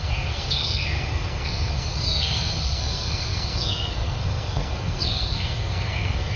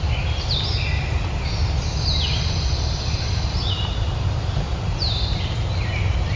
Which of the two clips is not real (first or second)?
first